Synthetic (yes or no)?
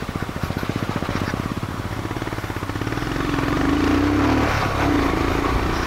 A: no